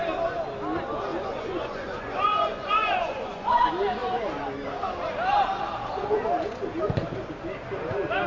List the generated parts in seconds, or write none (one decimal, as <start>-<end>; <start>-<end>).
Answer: 1.1-3.6